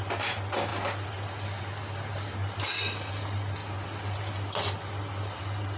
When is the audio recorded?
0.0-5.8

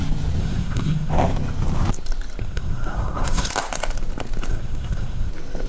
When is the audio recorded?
0.0-0.4; 1.1-2.4; 3.5-4.5; 5.3-5.7

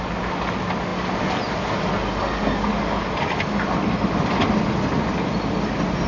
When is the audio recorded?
0.0-6.1

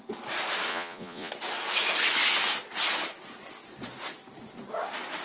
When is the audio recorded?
0.0-0.7; 1.3-5.2